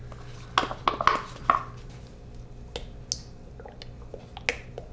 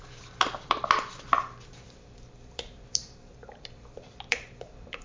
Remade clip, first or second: second